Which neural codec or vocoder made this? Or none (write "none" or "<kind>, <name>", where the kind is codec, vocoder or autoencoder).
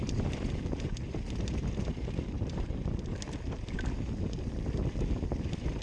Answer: none